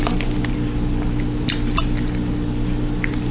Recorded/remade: recorded